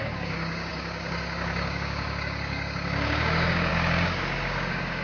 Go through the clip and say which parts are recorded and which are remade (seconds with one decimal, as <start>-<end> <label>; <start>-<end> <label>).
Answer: 0.0-5.0 remade